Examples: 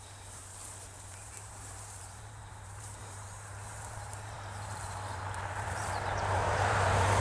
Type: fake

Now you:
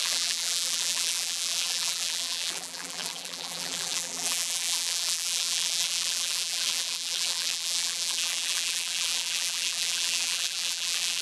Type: fake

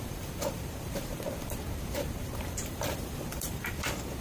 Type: fake